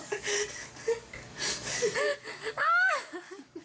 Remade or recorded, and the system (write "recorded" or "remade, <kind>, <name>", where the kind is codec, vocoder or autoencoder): remade, codec, DAC